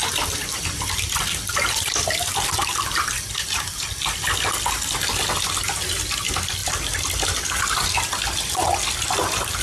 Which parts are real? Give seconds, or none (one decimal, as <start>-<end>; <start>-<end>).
4.6-6.6; 7.6-9.6